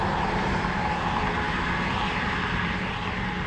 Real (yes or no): yes